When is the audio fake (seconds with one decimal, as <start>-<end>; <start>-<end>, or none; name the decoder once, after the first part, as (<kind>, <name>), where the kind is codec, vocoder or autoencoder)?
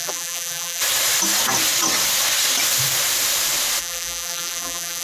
0.0-0.8 (vocoder, BigVGAN v2); 3.8-5.0